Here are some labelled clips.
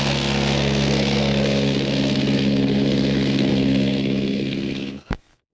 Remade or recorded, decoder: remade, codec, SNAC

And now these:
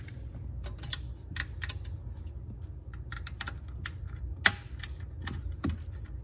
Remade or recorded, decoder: recorded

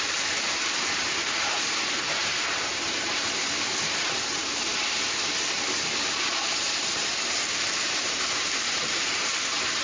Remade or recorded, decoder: remade, vocoder, BigVGAN v2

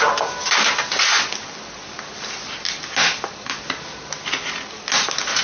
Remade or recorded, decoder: recorded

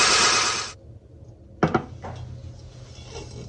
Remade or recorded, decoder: recorded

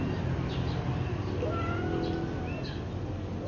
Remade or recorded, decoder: recorded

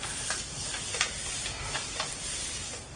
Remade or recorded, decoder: recorded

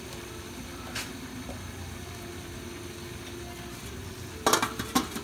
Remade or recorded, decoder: recorded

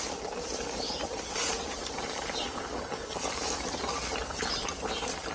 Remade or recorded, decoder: remade, vocoder, BigVGAN v2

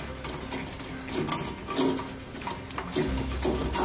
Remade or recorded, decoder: recorded